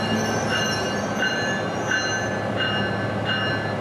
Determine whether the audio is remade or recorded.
recorded